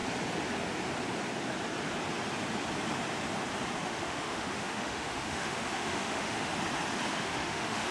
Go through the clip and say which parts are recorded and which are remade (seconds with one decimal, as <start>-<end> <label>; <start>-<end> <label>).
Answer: 0.0-3.8 recorded; 3.8-6.5 remade; 6.5-7.1 recorded; 7.1-7.9 remade